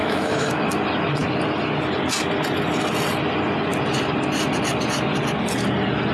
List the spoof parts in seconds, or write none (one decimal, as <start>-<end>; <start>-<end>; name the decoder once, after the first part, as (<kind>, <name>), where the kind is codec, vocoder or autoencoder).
0.0-0.6 (autoencoder, DAC-VAE)